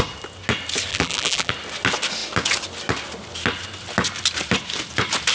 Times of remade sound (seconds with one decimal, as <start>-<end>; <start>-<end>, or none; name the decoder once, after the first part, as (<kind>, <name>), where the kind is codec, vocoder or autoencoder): 0.9-1.5 (vocoder, BigVGAN v2)